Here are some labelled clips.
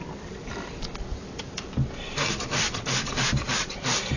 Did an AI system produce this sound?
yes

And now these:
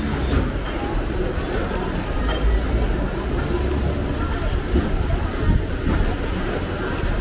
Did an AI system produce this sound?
no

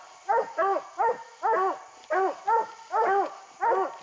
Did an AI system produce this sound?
no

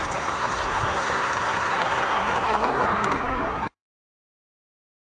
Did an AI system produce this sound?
yes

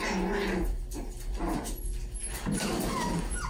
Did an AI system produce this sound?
no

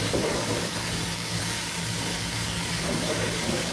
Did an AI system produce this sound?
yes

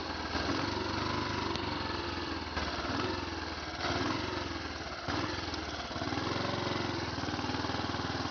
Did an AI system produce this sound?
no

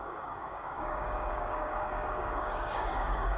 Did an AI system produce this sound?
yes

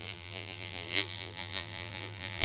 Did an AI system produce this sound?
yes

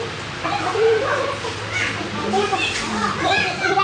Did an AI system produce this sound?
no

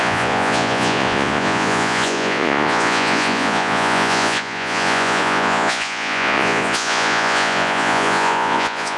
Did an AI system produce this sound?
yes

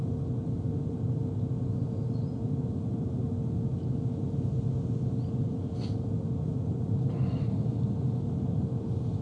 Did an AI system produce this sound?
no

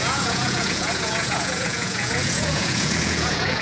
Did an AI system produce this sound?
yes